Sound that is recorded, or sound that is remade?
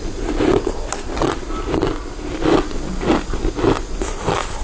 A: recorded